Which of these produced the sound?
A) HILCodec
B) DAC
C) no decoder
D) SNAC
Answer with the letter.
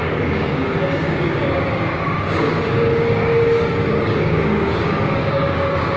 B